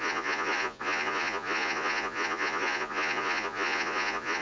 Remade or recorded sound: remade